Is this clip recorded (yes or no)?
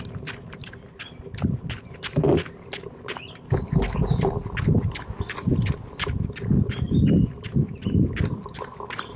yes